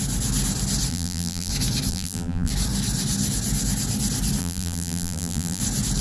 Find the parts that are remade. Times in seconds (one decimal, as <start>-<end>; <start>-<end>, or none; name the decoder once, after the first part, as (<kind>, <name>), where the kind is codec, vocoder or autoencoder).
0.9-1.5 (vocoder, BigVGAN v2); 1.9-2.5; 4.4-5.6